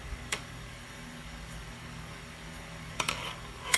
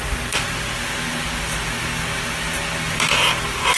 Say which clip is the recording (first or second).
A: second